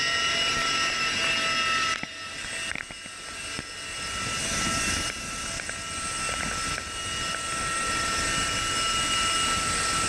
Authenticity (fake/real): real